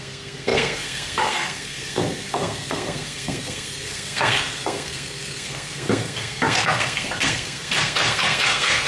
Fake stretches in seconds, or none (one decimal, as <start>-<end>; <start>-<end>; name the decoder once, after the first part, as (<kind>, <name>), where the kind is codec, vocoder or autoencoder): 0.0-8.9 (codec, SNAC)